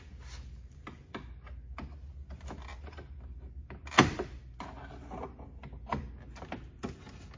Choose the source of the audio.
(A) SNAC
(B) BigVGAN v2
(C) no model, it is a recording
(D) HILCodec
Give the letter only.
C